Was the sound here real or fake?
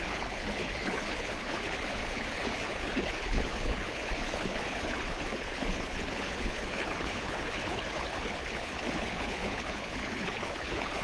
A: fake